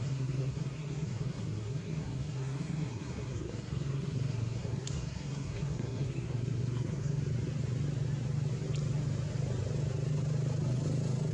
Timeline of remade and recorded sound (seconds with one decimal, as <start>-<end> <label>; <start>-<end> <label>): 0.0-7.2 remade; 7.2-11.3 recorded